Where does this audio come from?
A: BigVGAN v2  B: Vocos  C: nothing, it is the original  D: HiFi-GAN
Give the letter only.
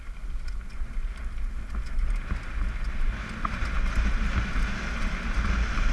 C